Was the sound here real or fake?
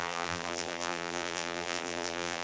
fake